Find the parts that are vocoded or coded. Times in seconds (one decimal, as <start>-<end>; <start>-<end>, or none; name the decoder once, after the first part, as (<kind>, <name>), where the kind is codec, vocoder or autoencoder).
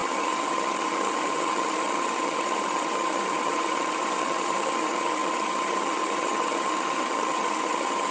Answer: 0.0-8.1 (vocoder, HiFi-GAN)